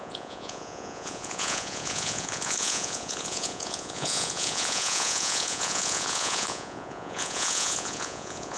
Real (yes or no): no